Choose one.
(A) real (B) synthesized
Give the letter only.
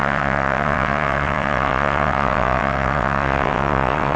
B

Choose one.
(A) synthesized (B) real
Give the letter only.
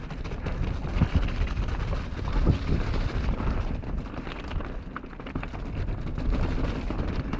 B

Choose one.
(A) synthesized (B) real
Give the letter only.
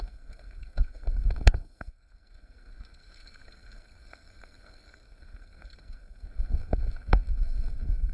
A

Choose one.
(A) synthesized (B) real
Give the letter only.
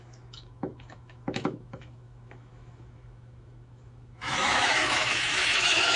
A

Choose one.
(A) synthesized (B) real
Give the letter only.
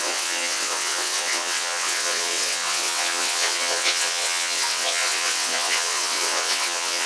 A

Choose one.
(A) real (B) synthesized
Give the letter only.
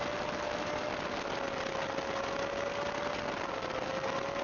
A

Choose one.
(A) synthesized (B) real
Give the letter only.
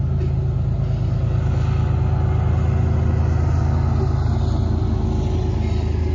B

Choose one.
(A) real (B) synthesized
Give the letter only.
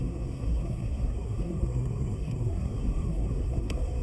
B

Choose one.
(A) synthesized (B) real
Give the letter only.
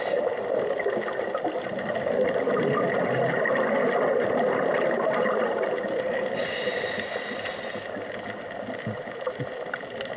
B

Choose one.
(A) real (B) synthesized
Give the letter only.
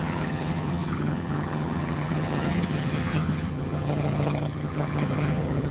B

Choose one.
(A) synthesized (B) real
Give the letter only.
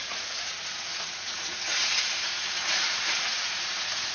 A